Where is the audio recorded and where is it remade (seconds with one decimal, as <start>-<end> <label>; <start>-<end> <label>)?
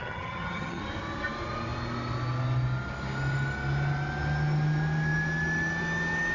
0.0-0.8 remade; 0.8-6.3 recorded